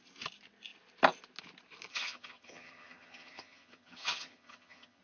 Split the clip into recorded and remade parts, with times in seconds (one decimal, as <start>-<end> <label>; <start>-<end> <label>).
0.0-1.9 recorded; 1.9-5.0 remade